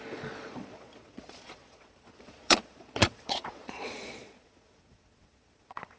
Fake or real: fake